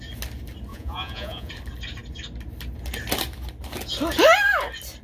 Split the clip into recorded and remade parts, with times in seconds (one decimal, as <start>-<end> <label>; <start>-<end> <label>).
0.0-0.7 recorded; 0.7-1.5 remade; 1.5-5.0 recorded